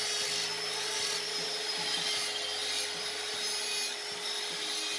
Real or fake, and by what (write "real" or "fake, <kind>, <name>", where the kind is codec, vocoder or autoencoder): real